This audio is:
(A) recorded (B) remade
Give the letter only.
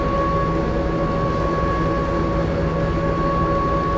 A